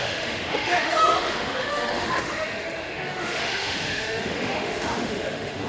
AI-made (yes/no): yes